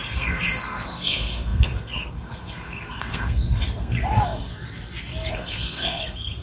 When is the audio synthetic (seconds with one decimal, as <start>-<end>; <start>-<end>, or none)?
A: 0.0-4.5; 5.3-6.4